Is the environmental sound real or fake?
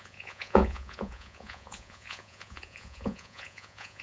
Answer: fake